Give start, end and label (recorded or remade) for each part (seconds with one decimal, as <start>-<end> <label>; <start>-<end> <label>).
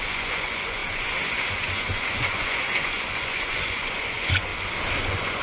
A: 0.0-4.5 remade; 4.5-5.0 recorded; 5.0-5.4 remade